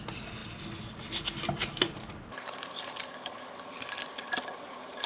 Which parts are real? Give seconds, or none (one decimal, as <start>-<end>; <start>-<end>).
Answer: 0.0-5.1